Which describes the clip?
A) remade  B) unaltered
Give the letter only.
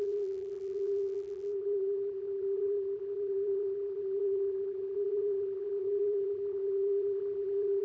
A